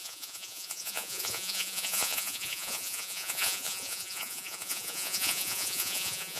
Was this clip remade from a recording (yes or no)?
yes